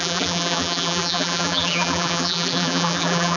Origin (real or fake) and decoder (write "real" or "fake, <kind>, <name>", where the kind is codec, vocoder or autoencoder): fake, vocoder, BigVGAN v2